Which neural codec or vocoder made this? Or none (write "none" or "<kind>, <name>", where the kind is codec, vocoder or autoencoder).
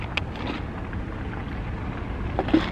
none